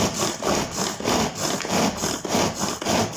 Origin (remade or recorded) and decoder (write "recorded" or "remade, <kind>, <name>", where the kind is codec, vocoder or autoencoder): recorded